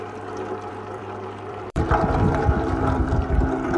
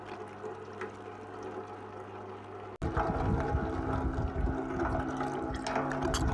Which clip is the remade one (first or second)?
first